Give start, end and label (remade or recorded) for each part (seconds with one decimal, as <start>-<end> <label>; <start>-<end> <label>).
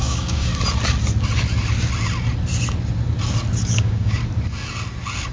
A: 0.0-0.5 remade; 0.5-3.7 recorded; 3.7-4.2 remade; 4.2-5.3 recorded